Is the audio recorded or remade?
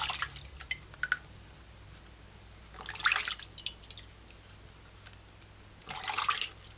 recorded